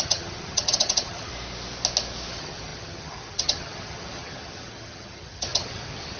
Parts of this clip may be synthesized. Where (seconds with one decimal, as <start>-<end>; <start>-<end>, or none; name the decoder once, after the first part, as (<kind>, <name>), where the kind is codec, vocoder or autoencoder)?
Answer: 0.0-1.3 (vocoder, HiFi-GAN); 2.3-6.2